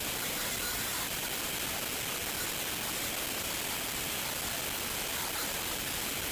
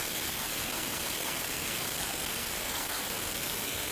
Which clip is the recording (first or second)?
first